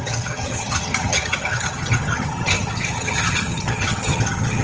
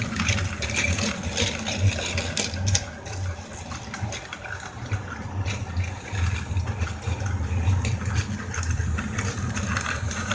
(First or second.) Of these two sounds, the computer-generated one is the first